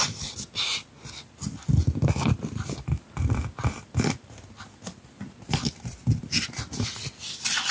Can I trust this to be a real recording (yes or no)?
yes